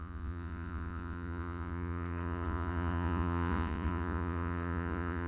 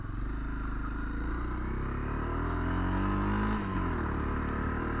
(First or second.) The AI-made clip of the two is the first